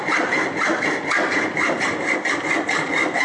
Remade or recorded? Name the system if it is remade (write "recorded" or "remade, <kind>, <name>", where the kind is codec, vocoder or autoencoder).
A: recorded